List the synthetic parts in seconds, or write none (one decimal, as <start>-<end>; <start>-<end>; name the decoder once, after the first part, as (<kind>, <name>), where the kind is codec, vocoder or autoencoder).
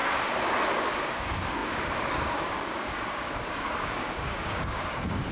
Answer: 0.7-5.3 (codec, DAC)